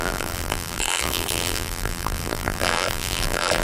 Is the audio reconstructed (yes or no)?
yes